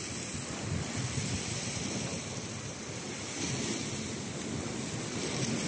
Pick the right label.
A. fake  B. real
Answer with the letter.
B